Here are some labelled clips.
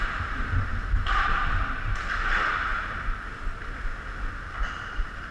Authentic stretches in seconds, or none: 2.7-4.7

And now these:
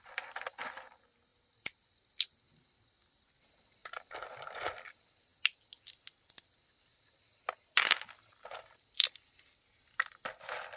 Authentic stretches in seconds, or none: 0.0-10.8

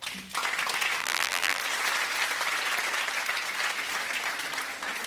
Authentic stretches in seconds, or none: 0.0-1.0; 1.6-5.1